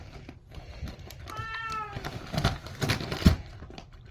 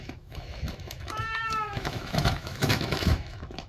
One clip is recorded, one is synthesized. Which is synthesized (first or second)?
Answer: second